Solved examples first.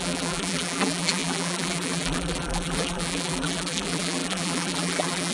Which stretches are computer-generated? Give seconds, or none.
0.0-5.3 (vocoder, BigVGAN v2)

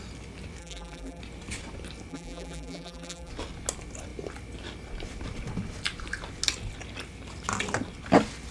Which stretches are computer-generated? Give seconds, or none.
0.6-1.2 (vocoder, BigVGAN v2); 2.1-3.3